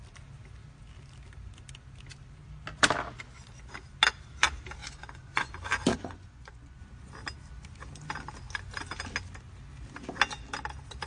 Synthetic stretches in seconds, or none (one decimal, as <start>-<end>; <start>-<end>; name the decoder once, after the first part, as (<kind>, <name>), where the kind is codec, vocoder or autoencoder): 4.8-5.5 (vocoder, Vocos); 5.9-6.8